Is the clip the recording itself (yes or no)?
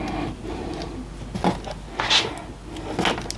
yes